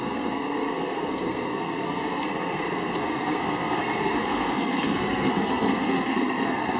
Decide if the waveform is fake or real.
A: fake